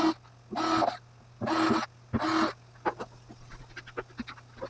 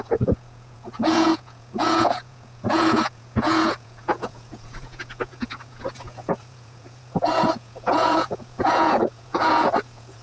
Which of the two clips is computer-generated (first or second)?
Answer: second